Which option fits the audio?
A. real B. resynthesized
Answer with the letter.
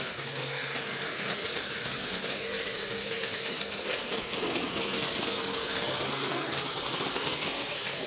B